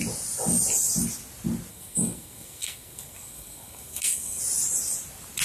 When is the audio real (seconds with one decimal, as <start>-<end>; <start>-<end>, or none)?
0.0-1.7; 4.4-5.4